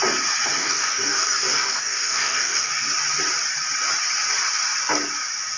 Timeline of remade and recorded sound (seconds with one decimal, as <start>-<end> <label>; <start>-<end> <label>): 0.0-0.6 recorded; 0.6-2.7 remade; 2.7-5.6 recorded